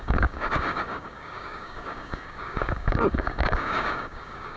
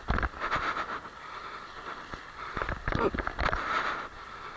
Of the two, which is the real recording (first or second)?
second